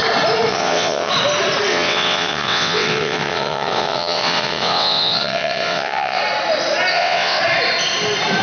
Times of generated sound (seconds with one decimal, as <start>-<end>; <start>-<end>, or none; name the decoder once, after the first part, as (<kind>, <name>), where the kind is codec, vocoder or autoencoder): 0.5-1.1 (vocoder, WaveNeXt); 1.7-6.2; 6.9-7.4